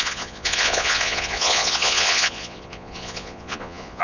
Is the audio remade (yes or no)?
yes